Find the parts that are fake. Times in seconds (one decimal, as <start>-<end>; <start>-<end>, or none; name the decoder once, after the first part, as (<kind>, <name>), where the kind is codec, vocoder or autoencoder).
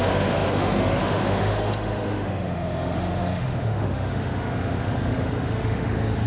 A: 0.0-6.3 (autoencoder, DAC-VAE)